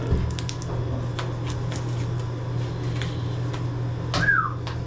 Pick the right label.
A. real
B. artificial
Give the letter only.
A